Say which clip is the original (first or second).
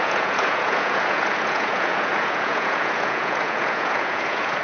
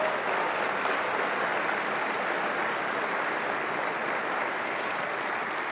second